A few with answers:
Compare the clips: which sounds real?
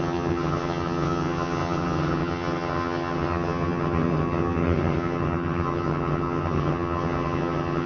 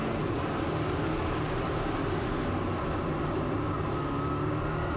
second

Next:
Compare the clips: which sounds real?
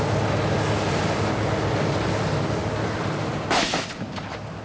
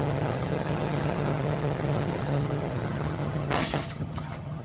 first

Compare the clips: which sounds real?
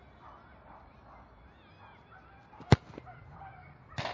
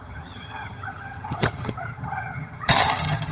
first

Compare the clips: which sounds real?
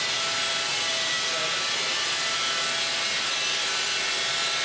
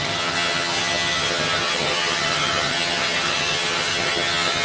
first